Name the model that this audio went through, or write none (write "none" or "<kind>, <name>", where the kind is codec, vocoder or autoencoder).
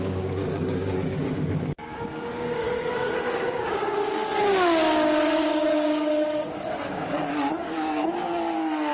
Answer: codec, DAC